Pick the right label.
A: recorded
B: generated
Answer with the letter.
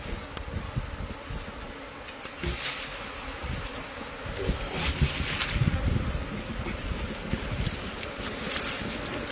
A